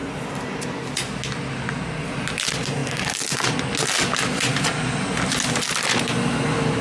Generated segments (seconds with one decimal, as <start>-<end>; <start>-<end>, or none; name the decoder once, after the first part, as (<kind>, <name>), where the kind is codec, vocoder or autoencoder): none